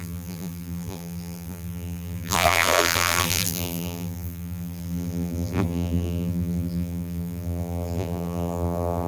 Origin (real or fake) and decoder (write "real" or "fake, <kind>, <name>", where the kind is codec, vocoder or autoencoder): fake, vocoder, BigVGAN v2